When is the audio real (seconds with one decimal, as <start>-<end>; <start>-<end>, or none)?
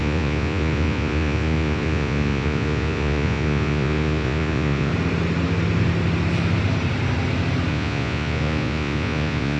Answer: 4.9-7.7